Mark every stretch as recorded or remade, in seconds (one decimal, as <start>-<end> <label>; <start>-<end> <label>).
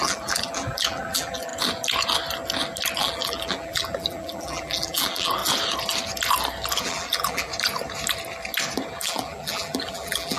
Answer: 0.0-1.5 remade; 1.5-3.0 recorded; 3.0-5.4 remade; 5.4-6.8 recorded; 6.8-7.5 remade; 7.5-8.9 recorded; 8.9-10.4 remade